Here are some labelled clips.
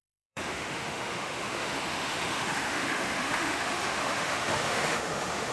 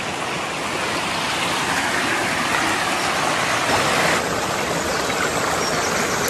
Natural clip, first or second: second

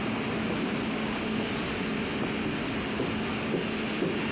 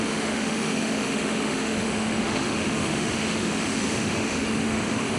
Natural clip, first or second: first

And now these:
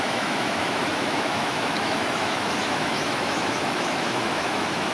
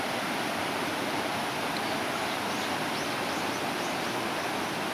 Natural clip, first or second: second